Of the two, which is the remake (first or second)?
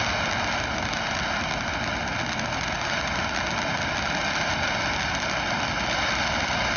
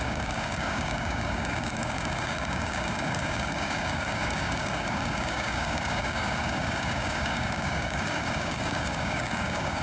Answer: second